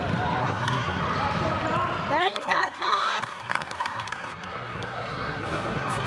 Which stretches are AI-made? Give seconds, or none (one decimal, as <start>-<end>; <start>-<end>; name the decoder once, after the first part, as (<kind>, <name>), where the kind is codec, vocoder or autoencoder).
0.4-1.0 (codec, SNAC); 2.2-6.1